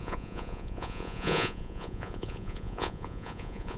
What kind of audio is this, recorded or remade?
remade